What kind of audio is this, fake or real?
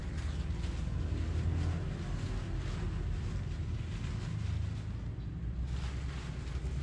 real